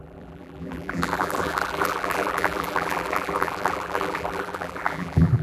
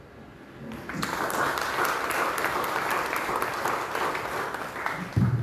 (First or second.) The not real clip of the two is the first